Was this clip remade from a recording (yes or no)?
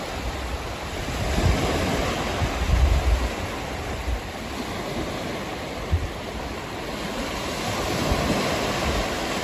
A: no